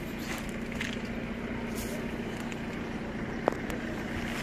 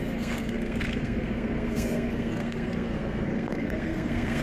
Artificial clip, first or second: second